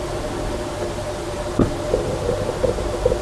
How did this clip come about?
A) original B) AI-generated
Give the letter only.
A